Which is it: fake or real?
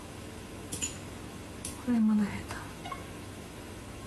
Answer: fake